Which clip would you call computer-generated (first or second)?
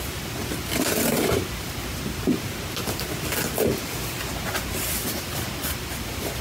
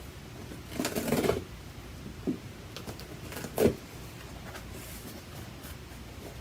first